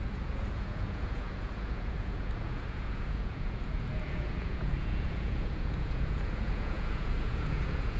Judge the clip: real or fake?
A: fake